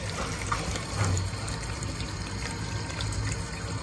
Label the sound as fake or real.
real